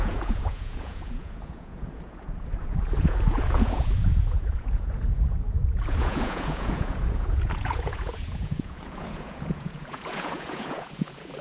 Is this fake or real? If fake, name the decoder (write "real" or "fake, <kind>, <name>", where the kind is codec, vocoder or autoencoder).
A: fake, vocoder, Vocos